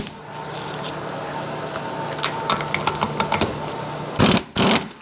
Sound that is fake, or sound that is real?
real